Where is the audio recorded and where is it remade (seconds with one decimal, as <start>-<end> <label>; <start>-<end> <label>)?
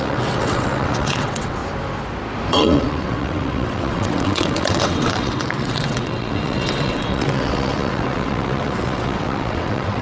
0.0-1.6 remade; 1.6-2.5 recorded; 2.5-10.0 remade